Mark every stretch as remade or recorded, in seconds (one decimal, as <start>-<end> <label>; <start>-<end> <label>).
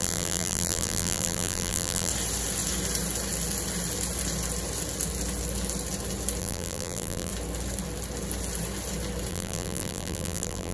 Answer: 0.0-2.1 remade; 2.1-6.4 recorded; 6.4-7.3 remade; 7.3-9.3 recorded; 9.3-10.7 remade